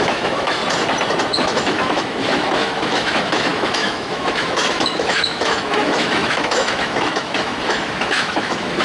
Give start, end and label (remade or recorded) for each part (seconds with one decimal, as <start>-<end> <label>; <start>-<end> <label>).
0.0-0.6 remade; 0.6-1.4 recorded; 1.4-8.8 remade